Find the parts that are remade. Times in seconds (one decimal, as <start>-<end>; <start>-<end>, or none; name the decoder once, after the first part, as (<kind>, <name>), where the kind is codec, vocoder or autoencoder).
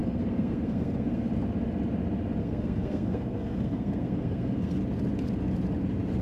0.0-1.3 (codec, SNAC); 2.4-4.8